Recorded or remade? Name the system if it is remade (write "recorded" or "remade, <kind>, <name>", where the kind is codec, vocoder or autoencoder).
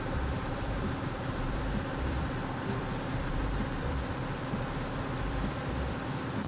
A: remade, vocoder, BigVGAN v2